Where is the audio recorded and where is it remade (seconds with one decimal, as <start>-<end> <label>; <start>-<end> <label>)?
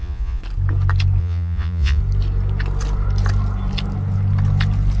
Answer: 0.0-0.4 remade; 0.4-1.2 recorded; 1.2-2.0 remade; 2.0-5.0 recorded